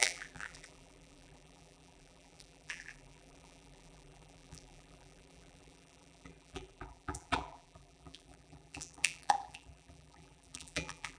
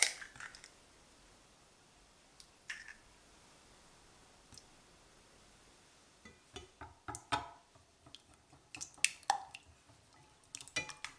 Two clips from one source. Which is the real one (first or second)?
second